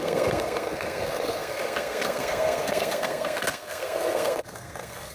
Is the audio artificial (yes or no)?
yes